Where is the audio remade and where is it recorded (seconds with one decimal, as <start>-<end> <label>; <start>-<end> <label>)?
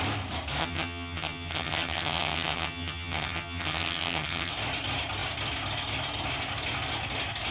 0.0-0.6 recorded; 0.6-4.5 remade; 4.5-7.5 recorded